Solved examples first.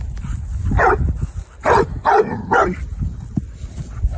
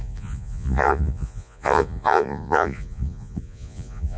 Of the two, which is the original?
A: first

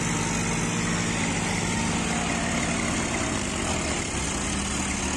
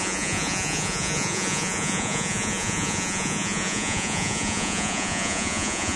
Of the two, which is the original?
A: first